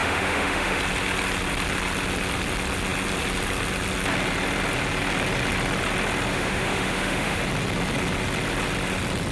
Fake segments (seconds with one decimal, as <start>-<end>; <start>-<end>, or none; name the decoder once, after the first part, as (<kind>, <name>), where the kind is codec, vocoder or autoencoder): 0.0-0.8 (autoencoder, DAC-VAE); 6.3-7.4